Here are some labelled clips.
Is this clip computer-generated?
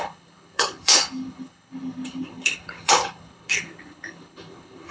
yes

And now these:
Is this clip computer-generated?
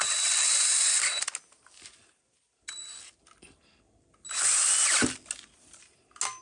no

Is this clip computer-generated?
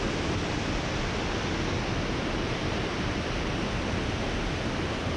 no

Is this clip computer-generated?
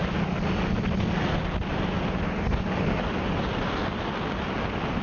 no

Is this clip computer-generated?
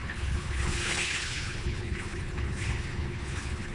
yes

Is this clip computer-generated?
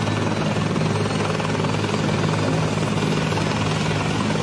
no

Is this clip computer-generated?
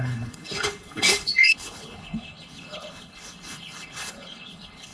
yes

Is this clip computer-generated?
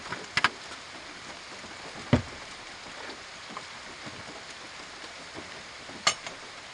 no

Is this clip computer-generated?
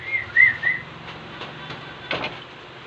no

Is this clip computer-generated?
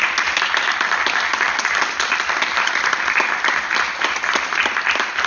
no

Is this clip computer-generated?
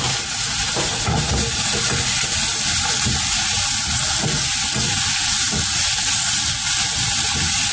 no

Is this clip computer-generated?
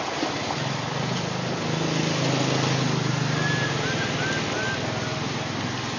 no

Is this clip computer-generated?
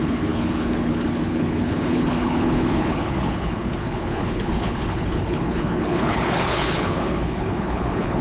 yes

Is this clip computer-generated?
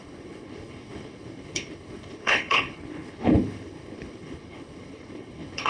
yes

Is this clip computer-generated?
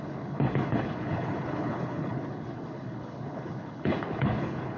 yes